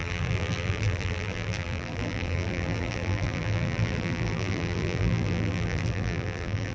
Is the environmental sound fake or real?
fake